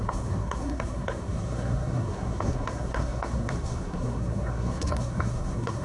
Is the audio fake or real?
fake